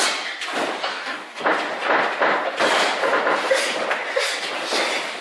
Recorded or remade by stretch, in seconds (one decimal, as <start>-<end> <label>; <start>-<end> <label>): 0.0-0.9 recorded; 0.9-1.4 remade; 1.4-5.2 recorded